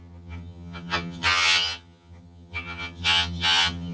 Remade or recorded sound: remade